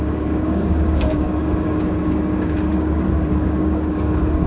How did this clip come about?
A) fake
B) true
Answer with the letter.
A